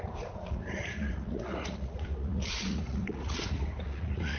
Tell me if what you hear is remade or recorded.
remade